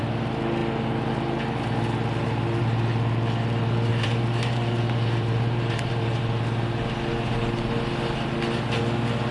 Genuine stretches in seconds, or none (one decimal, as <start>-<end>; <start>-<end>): 0.0-3.9; 6.2-9.3